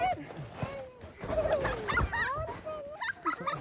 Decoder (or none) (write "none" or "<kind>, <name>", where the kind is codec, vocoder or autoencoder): none